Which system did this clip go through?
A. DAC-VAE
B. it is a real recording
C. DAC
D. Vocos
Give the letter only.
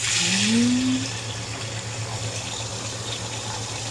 B